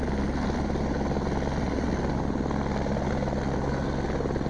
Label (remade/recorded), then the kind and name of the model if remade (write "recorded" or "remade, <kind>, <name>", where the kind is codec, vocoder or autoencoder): recorded